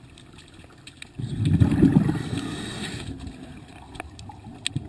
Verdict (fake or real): real